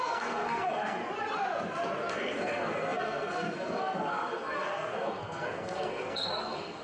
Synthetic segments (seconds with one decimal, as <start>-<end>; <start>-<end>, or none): 0.0-1.0; 2.1-6.8